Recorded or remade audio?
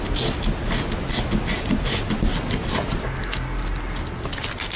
recorded